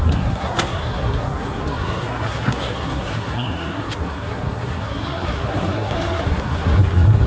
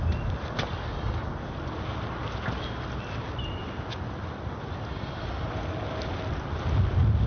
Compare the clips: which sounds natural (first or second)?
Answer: second